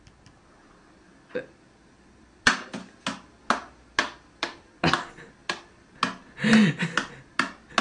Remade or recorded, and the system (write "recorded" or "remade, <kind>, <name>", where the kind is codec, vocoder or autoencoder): recorded